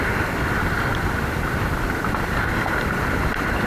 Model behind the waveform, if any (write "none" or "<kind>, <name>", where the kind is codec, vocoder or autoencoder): none